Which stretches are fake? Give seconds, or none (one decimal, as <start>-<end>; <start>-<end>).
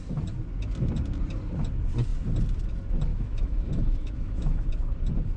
3.1-4.7